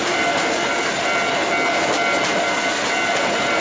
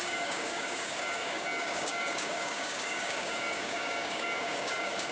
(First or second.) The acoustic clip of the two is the first